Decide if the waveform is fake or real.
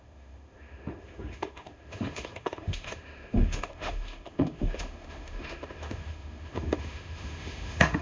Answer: fake